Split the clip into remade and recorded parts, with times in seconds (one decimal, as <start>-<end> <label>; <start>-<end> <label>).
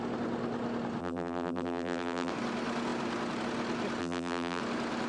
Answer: 0.0-1.0 recorded; 1.0-2.3 remade; 2.3-4.0 recorded; 4.0-4.6 remade; 4.6-5.1 recorded